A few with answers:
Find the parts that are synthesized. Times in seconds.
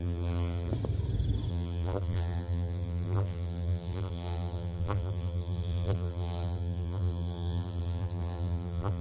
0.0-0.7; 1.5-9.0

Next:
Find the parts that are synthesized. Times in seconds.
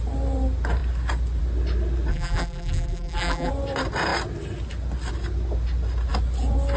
2.1-3.5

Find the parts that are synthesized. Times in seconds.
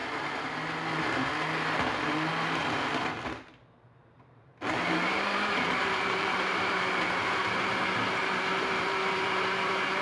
3.9-7.8; 8.5-10.0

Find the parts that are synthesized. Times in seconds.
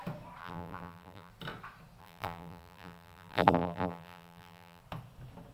0.4-1.3; 2.0-4.8